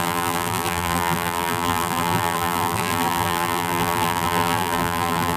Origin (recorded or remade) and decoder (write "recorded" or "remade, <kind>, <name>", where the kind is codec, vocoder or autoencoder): remade, vocoder, BigVGAN v2